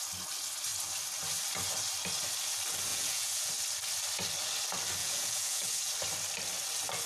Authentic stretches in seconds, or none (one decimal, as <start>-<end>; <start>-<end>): 0.0-2.9; 3.5-5.0; 5.9-7.1